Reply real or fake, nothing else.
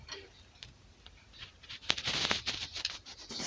fake